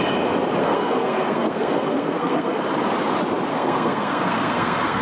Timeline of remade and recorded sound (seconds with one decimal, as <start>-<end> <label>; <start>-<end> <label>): 0.0-0.6 recorded; 0.6-2.6 remade; 2.6-3.5 recorded; 3.5-5.0 remade